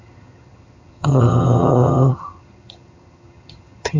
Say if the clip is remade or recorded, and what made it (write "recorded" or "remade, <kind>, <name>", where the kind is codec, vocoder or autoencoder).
remade, vocoder, HiFi-GAN